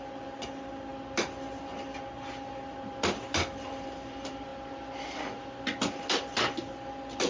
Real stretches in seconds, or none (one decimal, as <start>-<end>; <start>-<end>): 0.0-7.3